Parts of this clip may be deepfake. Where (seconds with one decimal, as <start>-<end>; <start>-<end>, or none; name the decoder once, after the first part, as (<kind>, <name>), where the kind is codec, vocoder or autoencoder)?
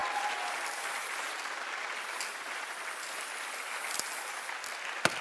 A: none